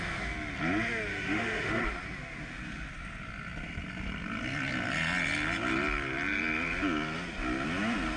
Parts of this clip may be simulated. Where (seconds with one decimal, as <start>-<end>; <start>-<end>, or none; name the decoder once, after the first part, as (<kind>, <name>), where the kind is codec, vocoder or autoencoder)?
1.1-1.8 (autoencoder, DAC-VAE)